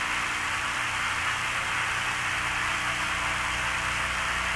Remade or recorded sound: recorded